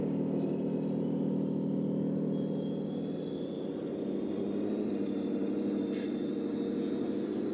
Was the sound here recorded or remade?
recorded